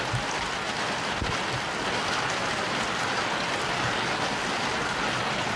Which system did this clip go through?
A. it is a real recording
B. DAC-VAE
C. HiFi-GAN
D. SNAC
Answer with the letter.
A